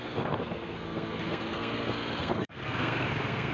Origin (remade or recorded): remade